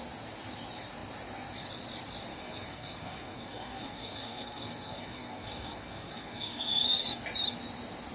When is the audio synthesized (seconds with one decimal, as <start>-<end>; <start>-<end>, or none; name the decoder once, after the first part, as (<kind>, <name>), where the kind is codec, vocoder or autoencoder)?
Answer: 2.3-7.2 (codec, SNAC)